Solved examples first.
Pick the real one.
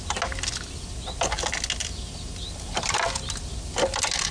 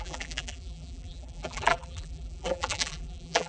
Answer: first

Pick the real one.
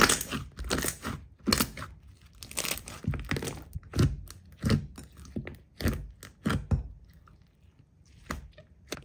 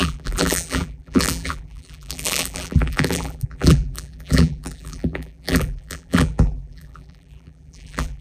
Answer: first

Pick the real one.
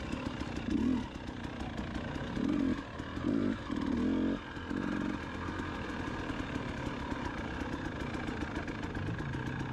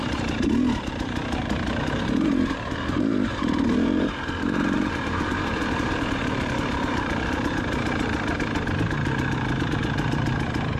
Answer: first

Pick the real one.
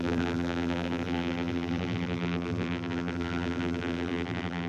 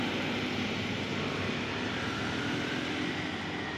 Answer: second